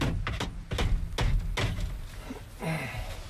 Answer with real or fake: real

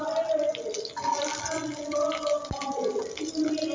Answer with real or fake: real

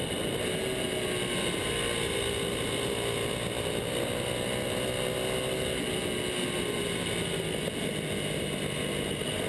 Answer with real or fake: real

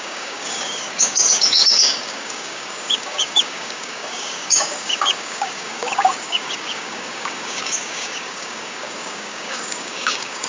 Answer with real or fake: fake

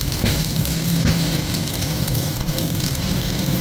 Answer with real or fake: fake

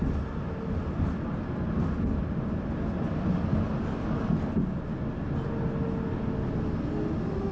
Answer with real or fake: real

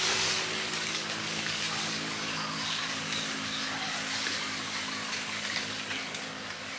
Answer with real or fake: fake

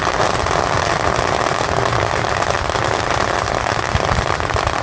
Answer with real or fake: real